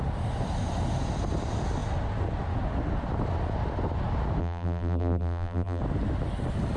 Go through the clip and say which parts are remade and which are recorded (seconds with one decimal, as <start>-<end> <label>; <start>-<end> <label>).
0.0-4.4 recorded; 4.4-5.8 remade; 5.8-6.8 recorded